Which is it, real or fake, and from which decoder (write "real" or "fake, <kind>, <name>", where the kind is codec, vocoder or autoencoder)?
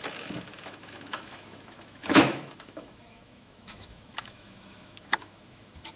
fake, autoencoder, DAC-VAE